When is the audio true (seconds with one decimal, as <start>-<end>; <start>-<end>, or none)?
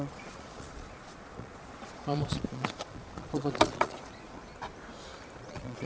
4.4-5.4